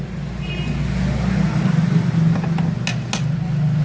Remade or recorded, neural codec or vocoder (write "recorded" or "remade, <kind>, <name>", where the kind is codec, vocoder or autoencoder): recorded